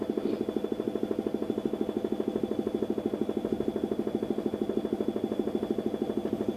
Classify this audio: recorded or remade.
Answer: recorded